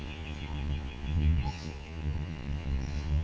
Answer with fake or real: fake